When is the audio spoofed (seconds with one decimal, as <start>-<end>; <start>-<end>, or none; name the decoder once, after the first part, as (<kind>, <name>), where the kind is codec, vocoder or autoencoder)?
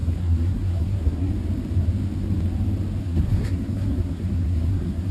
0.0-1.3 (codec, SNAC); 3.0-5.1